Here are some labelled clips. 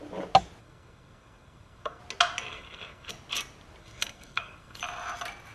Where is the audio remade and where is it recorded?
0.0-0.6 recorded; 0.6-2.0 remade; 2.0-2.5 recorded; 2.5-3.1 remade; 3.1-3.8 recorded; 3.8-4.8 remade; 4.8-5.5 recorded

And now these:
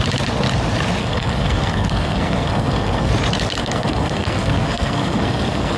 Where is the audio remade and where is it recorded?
0.0-1.0 recorded; 1.0-3.1 remade; 3.1-3.6 recorded; 3.6-5.8 remade